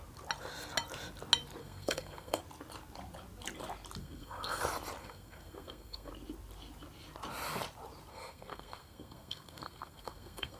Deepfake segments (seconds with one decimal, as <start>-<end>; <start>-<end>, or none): 1.6-2.4; 4.0-4.6; 5.0-6.1; 8.1-10.6